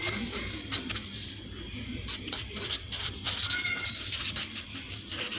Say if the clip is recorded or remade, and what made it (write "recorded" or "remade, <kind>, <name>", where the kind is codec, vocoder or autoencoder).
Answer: remade, vocoder, BigVGAN v2